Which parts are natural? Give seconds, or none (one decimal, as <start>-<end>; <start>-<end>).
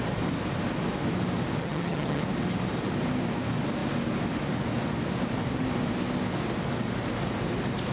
0.0-1.6; 2.2-7.9